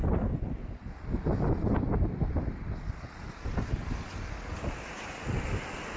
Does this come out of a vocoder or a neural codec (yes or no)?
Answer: no